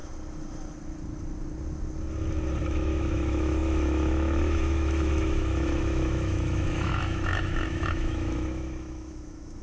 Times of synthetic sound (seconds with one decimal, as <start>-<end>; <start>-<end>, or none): 2.6-9.6